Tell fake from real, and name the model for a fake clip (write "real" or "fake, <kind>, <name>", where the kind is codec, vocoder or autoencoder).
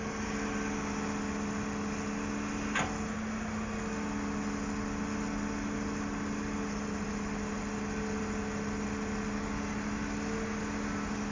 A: real